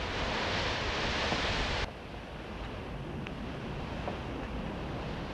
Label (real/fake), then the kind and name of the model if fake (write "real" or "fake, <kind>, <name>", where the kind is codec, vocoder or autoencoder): real